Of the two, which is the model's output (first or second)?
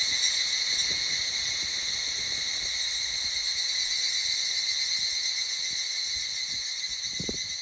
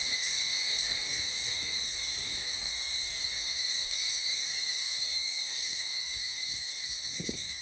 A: second